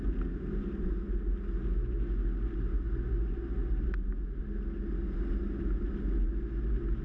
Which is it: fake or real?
real